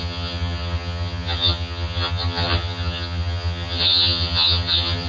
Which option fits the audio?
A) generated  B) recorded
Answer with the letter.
A